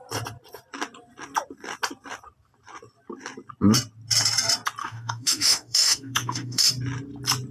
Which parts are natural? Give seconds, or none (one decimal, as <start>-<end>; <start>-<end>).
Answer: 0.0-4.8; 6.7-7.5